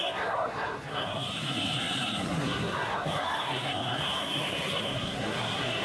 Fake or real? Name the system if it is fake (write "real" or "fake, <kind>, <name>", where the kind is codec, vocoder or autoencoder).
fake, codec, SNAC